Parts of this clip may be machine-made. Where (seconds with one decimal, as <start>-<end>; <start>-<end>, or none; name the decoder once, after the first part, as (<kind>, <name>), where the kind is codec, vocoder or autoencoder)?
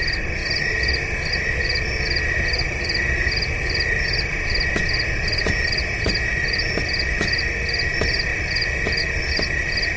none